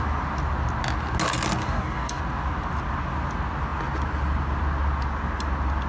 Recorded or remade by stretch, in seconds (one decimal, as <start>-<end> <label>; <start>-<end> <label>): 0.0-1.6 recorded; 1.6-2.2 remade; 2.2-5.9 recorded